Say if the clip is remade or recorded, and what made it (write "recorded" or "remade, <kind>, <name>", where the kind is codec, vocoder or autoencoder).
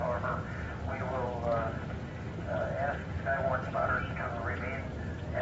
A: recorded